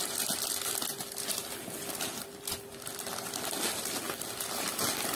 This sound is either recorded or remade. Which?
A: recorded